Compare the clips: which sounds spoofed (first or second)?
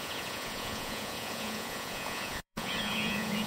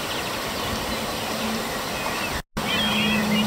first